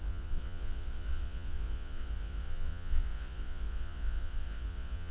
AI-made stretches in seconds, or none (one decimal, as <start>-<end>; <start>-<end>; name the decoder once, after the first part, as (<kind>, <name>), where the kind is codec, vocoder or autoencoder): 0.0-5.1 (vocoder, Vocos)